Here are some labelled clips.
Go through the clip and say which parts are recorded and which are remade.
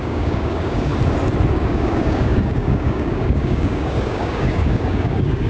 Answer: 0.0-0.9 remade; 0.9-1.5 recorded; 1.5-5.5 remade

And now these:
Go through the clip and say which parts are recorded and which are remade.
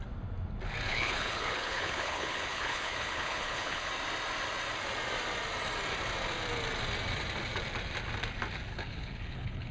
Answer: 0.0-0.9 recorded; 0.9-3.9 remade; 3.9-8.7 recorded; 8.7-9.7 remade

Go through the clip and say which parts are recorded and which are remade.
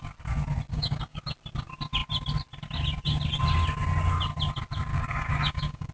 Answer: 0.0-0.7 recorded; 0.7-1.2 remade; 1.2-4.9 recorded; 4.9-5.9 remade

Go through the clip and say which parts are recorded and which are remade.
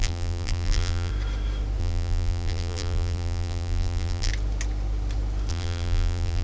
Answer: 0.0-1.1 remade; 1.1-1.8 recorded; 1.8-4.3 remade; 4.3-5.5 recorded; 5.5-6.4 remade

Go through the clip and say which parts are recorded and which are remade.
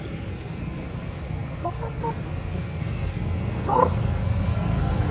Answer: 0.0-5.1 remade